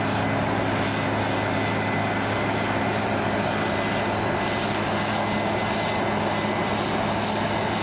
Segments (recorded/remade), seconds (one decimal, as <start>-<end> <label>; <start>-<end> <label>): 0.0-7.8 recorded